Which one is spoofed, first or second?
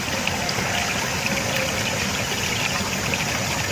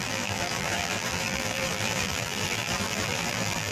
second